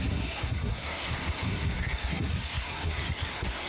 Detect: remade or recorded remade